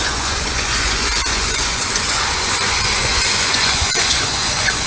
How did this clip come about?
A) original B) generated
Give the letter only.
B